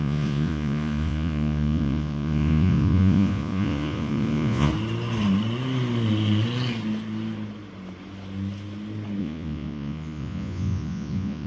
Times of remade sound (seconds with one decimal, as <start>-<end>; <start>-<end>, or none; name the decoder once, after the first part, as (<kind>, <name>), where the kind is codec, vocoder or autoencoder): 0.0-4.7 (vocoder, Vocos); 9.2-11.5